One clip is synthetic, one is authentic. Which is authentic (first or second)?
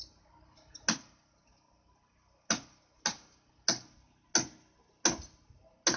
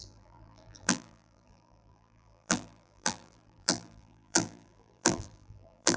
first